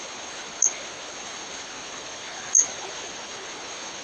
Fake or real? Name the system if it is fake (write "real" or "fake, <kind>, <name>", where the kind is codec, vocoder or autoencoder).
fake, codec, HILCodec